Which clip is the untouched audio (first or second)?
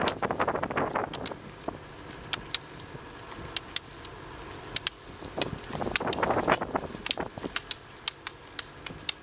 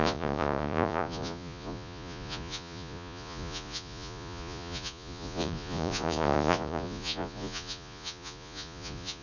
first